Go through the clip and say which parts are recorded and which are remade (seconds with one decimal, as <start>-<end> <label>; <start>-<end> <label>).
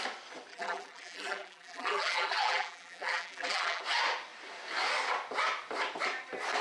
0.0-0.5 recorded; 0.5-3.8 remade; 3.8-6.6 recorded